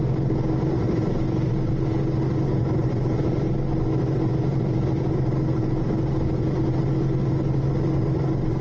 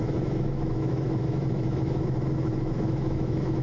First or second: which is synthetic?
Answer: second